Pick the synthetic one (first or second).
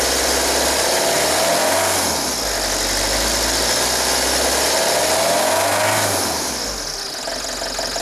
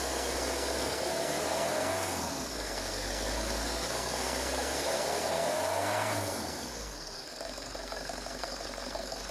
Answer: second